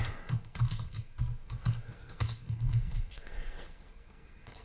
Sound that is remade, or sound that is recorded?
remade